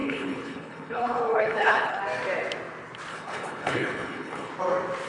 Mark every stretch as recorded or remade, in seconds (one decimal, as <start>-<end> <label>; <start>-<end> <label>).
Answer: 0.0-2.0 remade; 2.0-3.1 recorded; 3.1-4.5 remade; 4.5-5.1 recorded